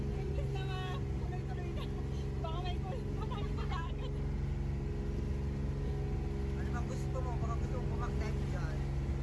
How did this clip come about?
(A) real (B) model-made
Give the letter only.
A